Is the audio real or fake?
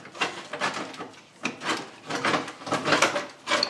real